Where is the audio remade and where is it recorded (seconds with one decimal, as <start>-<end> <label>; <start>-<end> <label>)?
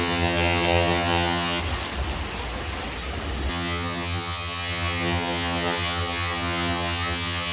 0.0-1.6 remade; 1.6-3.5 recorded; 3.5-7.5 remade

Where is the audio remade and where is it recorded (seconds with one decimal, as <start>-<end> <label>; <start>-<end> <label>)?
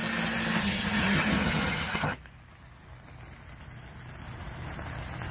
0.0-0.6 recorded; 0.6-2.1 remade; 2.1-5.3 recorded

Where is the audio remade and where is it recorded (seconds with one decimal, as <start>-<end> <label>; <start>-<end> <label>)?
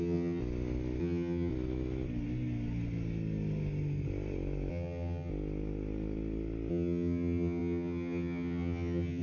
0.0-0.4 remade; 0.4-1.0 recorded; 1.0-1.5 remade; 1.5-4.7 recorded; 4.7-5.3 remade; 5.3-6.7 recorded; 6.7-9.2 remade